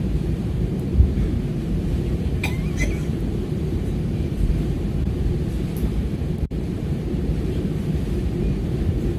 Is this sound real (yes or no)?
no